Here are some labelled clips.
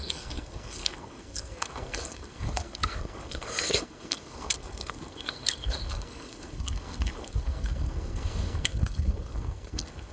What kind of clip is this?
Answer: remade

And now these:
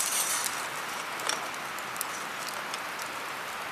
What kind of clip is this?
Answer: recorded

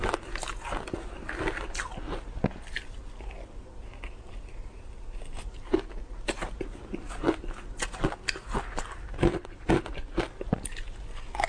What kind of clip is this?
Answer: recorded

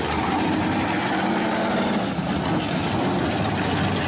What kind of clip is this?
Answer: recorded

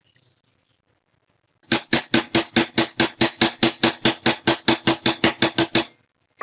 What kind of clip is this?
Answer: recorded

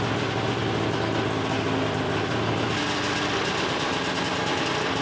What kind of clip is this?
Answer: recorded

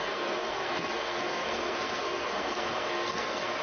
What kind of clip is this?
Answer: remade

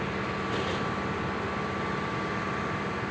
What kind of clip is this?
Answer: recorded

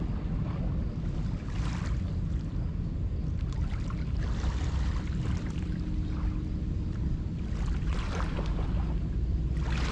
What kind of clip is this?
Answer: recorded